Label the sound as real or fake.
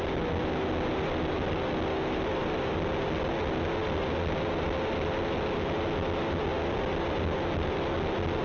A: real